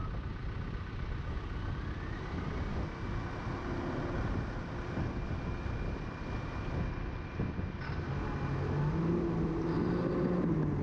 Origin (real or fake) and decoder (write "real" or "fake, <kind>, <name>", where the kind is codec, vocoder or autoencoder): real